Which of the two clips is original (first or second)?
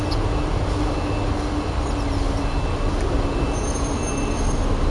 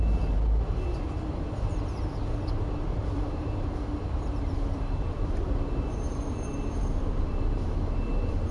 first